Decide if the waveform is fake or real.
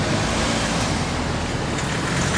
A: real